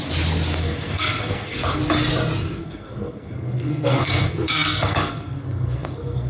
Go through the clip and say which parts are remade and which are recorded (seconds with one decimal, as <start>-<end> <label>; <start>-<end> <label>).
0.0-0.6 recorded; 0.6-1.8 remade; 1.8-2.4 recorded; 2.4-6.3 remade